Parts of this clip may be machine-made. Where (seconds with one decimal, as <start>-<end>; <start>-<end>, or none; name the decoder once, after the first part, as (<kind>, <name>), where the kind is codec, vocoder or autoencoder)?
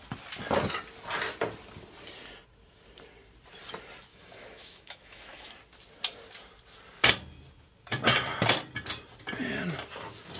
4.1-5.5 (autoencoder, DAC-VAE)